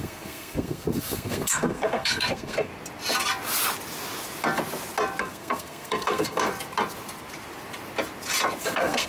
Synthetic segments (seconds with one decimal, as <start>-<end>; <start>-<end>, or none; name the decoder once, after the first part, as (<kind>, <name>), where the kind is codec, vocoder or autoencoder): 0.0-2.7 (codec, SNAC); 5.2-6.5; 8.6-9.1